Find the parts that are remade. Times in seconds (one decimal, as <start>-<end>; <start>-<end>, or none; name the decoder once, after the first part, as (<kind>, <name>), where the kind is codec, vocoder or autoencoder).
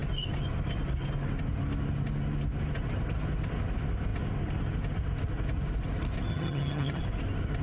6.3-7.0 (vocoder, HiFi-GAN)